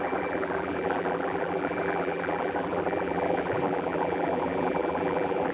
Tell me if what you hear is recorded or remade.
remade